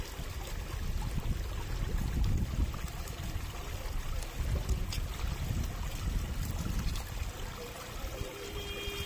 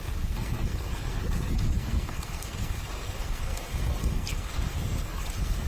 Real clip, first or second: first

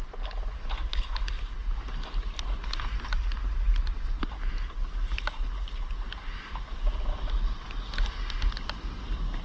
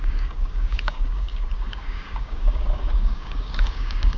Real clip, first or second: first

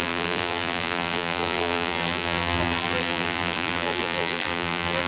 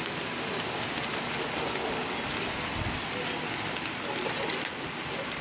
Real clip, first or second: second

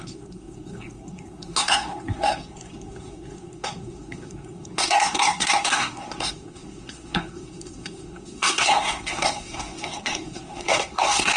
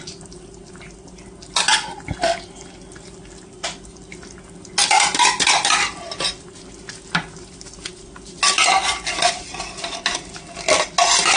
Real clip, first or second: second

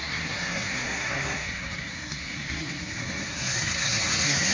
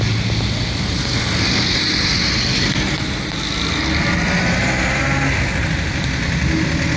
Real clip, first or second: second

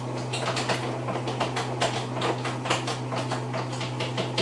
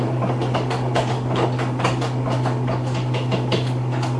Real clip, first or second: first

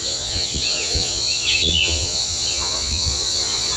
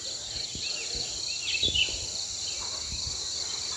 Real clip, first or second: second